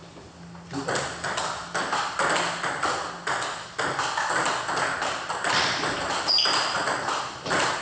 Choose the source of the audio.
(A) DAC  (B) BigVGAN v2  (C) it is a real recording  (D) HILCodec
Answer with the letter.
C